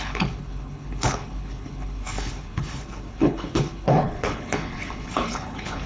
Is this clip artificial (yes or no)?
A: yes